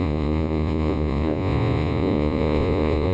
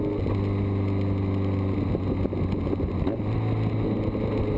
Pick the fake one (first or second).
first